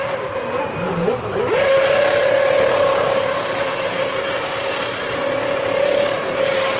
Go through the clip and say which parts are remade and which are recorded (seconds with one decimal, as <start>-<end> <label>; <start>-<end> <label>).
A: 0.0-6.8 remade